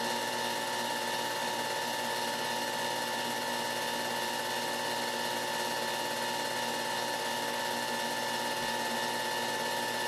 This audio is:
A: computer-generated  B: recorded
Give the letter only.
B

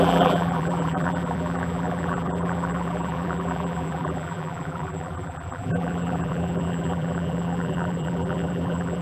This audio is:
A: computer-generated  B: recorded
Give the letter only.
A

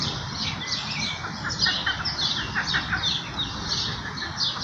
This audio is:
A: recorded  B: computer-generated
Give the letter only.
A